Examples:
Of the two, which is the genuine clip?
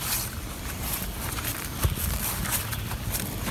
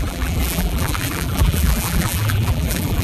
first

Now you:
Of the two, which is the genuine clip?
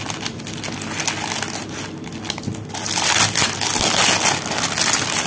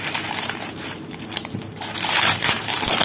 first